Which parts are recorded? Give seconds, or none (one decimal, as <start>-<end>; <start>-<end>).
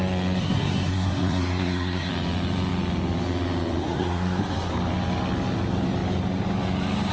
0.0-0.4; 2.1-3.8; 4.7-7.1